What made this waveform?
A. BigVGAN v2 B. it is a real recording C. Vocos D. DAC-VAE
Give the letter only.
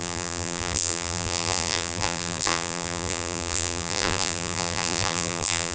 A